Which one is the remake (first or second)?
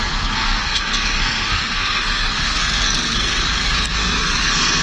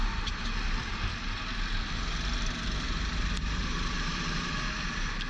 first